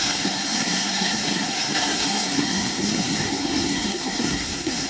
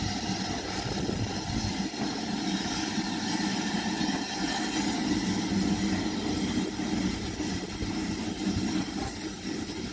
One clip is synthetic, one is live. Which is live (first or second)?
second